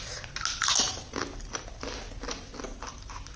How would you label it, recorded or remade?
recorded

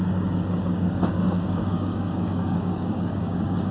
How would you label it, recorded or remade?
remade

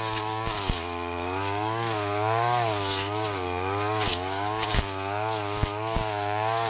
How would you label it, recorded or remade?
remade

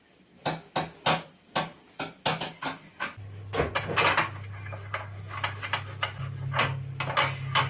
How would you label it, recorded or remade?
recorded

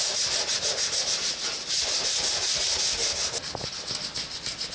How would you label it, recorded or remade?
recorded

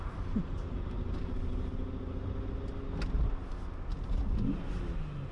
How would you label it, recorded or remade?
recorded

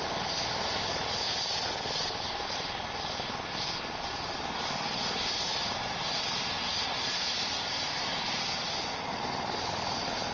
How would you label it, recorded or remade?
recorded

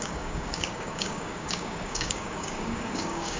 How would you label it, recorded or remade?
remade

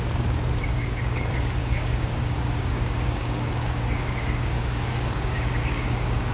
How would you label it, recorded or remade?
remade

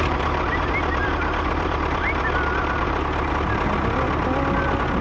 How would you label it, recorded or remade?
recorded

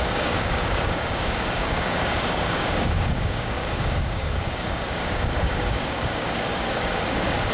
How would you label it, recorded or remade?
remade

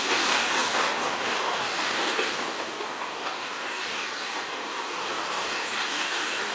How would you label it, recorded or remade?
remade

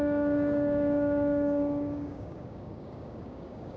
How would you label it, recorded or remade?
remade